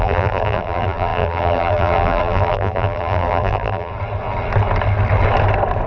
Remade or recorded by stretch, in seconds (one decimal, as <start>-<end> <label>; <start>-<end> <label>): 0.0-3.9 remade; 3.9-5.9 recorded